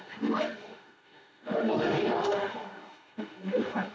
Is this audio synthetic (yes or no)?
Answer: yes